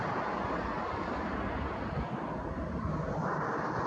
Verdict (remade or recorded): recorded